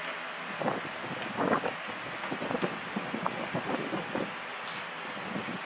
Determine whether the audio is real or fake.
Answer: real